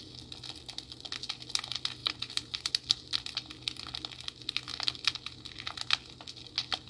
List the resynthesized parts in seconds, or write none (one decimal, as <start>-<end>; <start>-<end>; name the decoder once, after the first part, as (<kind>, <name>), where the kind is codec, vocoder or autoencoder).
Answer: 2.0-2.7 (vocoder, BigVGAN v2)